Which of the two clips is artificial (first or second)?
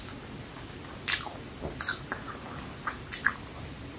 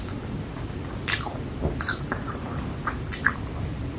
second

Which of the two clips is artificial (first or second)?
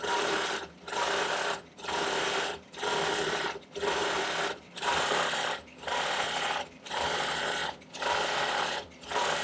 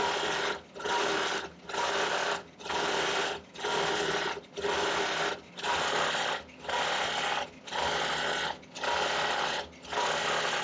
first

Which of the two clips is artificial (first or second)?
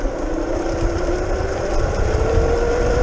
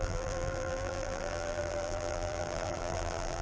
second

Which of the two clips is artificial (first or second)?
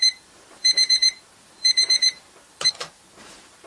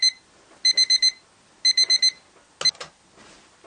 first